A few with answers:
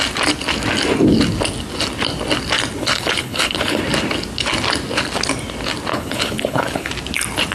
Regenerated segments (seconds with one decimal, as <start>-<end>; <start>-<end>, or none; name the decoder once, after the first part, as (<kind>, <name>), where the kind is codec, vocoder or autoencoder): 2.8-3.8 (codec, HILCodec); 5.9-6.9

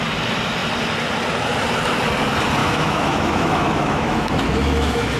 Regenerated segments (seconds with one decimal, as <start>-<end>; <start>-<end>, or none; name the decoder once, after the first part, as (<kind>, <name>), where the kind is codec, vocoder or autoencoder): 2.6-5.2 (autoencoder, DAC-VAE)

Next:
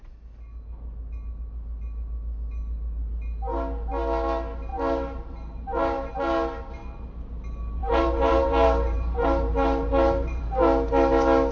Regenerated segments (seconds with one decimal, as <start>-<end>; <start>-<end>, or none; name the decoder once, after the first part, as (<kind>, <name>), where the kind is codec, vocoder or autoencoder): 4.7-6.1 (vocoder, BigVGAN v2); 7.8-10.4